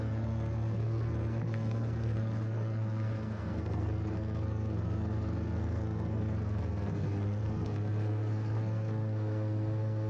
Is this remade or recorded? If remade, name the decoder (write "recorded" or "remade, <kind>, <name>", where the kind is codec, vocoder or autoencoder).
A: remade, codec, SNAC